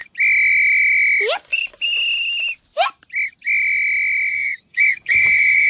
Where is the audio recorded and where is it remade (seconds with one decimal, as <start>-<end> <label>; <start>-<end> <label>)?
0.0-4.3 recorded; 4.3-5.7 remade